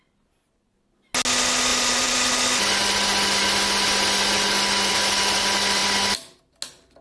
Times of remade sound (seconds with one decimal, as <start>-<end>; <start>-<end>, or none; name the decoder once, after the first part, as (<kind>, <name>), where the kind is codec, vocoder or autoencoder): 1.7-2.3 (vocoder, BigVGAN v2)